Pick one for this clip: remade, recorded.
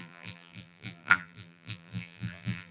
remade